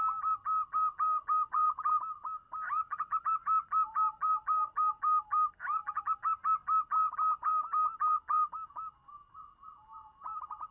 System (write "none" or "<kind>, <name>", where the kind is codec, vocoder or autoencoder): none